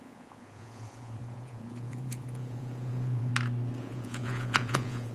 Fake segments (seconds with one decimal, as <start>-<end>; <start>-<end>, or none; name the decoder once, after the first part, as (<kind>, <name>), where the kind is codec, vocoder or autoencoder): 0.0-3.3 (vocoder, Vocos); 3.8-5.1